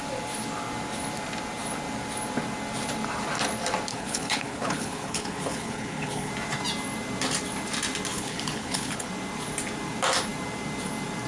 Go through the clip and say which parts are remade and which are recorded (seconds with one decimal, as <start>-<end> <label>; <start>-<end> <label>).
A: 0.0-3.9 recorded; 3.9-6.3 remade; 6.3-8.1 recorded; 8.1-9.1 remade; 9.1-11.3 recorded